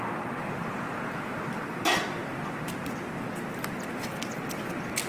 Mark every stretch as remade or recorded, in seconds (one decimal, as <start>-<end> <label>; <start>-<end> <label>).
0.0-5.1 recorded